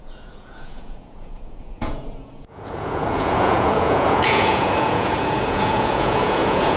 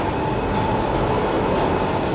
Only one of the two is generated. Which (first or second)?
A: first